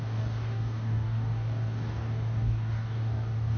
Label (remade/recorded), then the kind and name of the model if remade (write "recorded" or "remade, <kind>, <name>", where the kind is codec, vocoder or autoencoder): remade, codec, DAC